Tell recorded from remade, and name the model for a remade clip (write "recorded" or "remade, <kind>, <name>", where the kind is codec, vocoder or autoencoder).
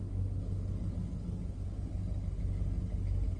recorded